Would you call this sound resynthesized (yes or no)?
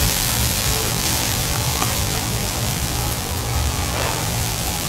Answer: yes